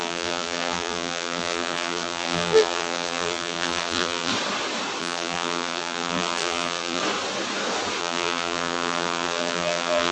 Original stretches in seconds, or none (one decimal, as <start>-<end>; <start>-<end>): 4.3-5.0; 7.0-8.0